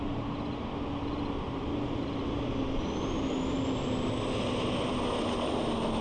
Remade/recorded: recorded